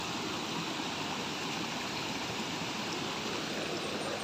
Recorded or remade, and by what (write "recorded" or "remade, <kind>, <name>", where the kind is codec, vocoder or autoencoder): recorded